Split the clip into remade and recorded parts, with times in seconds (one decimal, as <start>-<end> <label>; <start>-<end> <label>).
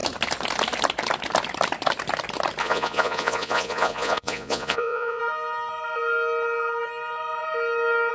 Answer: 0.0-2.6 recorded; 2.6-5.2 remade; 5.2-8.1 recorded